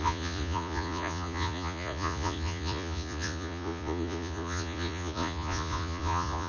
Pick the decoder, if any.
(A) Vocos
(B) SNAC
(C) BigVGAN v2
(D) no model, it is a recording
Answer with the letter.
A